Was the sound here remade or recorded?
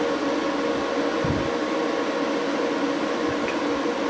recorded